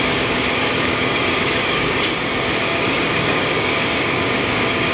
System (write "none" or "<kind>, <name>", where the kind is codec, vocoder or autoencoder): codec, DAC